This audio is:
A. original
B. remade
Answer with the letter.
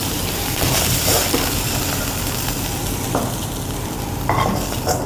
B